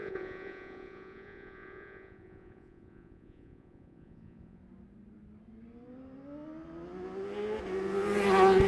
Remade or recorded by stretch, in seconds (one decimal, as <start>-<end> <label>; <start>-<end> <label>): 0.0-4.6 remade; 4.6-8.7 recorded